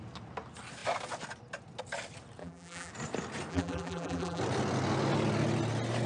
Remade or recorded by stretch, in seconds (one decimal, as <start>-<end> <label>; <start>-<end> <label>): 0.0-2.4 recorded; 2.4-2.9 remade; 2.9-3.5 recorded; 3.5-4.4 remade; 4.4-6.1 recorded